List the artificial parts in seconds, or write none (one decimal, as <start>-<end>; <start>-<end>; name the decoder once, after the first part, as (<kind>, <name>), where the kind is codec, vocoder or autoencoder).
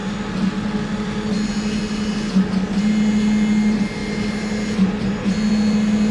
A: none